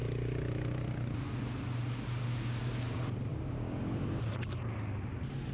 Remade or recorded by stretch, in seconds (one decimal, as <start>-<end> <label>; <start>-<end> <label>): 0.0-2.2 recorded; 2.2-2.8 remade; 2.8-3.3 recorded; 3.3-4.2 remade; 4.2-5.5 recorded

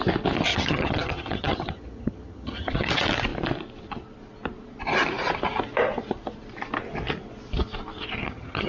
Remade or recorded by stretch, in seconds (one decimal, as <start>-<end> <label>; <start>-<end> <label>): 0.0-0.5 recorded; 0.5-2.9 remade; 2.9-8.2 recorded; 8.2-8.7 remade

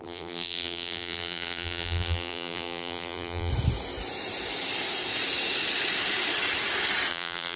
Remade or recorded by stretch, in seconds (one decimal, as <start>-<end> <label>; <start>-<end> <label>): 0.0-3.5 remade; 3.5-7.1 recorded; 7.1-7.6 remade